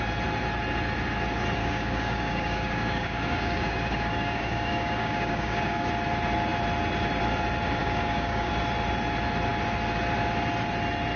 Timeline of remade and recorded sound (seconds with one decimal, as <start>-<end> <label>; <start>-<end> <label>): 0.0-1.6 recorded; 1.6-5.9 remade; 5.9-7.8 recorded; 7.8-8.5 remade; 8.5-11.2 recorded